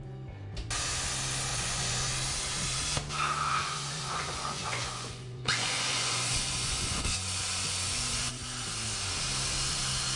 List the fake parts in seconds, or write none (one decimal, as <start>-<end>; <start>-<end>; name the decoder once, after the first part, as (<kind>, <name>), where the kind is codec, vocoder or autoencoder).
1.5-2.1 (vocoder, Vocos); 3.5-8.3